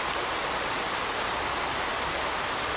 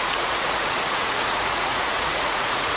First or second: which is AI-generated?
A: second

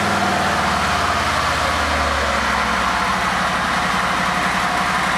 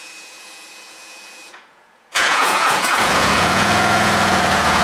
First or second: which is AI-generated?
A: second